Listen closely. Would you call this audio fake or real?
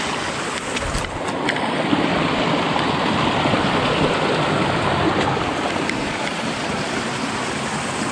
real